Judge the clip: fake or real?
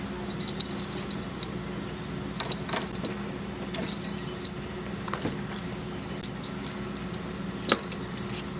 real